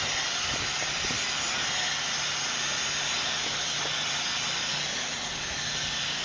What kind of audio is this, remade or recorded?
recorded